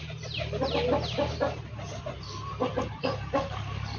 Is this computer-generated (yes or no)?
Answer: no